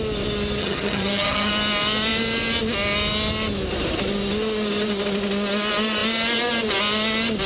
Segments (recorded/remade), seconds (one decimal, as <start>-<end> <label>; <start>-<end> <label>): 0.0-0.6 recorded; 0.6-1.5 remade; 1.5-7.5 recorded